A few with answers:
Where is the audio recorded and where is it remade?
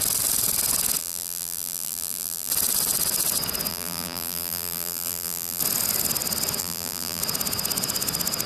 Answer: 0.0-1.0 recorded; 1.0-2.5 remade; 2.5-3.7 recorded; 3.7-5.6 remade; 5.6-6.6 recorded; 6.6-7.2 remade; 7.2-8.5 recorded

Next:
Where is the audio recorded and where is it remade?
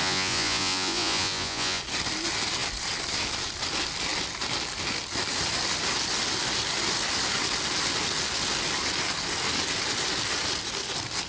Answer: 0.0-1.8 remade; 1.8-11.3 recorded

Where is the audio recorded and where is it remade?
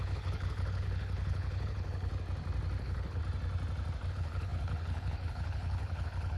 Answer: 0.0-2.1 remade; 2.1-2.8 recorded; 2.8-3.2 remade; 3.2-4.1 recorded; 4.1-6.4 remade